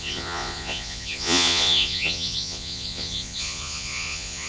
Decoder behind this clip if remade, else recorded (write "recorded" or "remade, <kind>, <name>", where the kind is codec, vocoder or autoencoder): remade, vocoder, Vocos